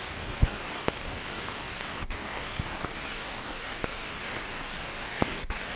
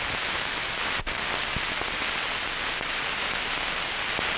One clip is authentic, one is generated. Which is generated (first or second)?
first